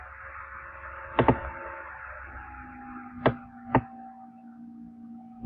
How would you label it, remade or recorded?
recorded